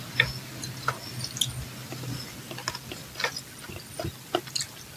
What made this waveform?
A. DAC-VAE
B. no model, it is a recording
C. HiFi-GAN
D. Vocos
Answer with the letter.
B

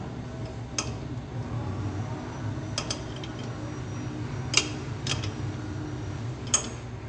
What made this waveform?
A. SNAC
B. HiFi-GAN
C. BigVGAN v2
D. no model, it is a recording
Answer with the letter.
D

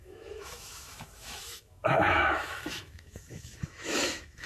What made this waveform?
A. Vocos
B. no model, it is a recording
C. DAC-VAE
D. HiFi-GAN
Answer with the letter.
C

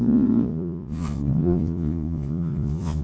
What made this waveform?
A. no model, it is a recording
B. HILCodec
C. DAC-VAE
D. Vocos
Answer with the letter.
D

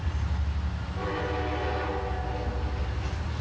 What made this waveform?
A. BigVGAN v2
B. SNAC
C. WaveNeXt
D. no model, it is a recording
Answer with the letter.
D